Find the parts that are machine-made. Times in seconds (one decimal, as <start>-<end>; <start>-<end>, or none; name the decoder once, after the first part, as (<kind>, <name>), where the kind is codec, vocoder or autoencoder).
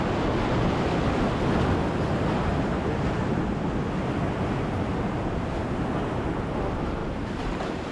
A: 2.5-3.4 (vocoder, BigVGAN v2); 4.9-5.5; 7.0-7.9